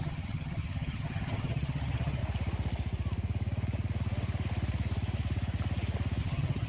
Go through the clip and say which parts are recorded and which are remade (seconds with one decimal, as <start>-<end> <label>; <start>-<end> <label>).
0.0-2.2 remade; 2.2-6.2 recorded; 6.2-6.7 remade

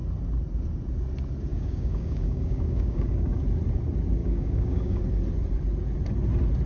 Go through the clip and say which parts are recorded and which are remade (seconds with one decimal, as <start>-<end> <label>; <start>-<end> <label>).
0.0-1.5 recorded; 1.5-3.4 remade; 3.4-4.2 recorded; 4.2-5.0 remade; 5.0-6.7 recorded

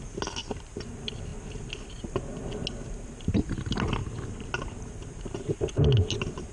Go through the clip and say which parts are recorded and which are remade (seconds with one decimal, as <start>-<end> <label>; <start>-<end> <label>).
0.0-0.4 recorded; 0.4-0.9 remade; 0.9-4.0 recorded; 4.0-5.2 remade; 5.2-6.5 recorded

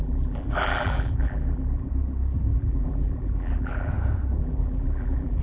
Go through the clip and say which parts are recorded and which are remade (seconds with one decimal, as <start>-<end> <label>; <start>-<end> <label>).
0.0-1.9 remade; 1.9-2.5 recorded; 2.5-3.9 remade; 3.9-4.4 recorded; 4.4-5.4 remade

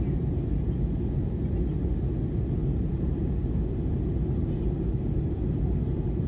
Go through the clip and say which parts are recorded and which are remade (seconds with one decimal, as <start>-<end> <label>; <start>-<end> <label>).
0.0-6.3 recorded

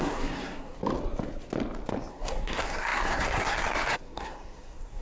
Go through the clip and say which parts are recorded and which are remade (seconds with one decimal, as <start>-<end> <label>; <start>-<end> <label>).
0.0-0.8 remade; 0.8-2.1 recorded; 2.1-5.0 remade

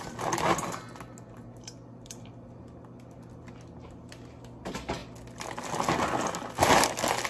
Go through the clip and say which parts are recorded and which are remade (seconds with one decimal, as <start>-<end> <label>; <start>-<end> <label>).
0.0-7.3 recorded